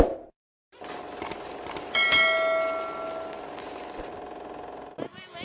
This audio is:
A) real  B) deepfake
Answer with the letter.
A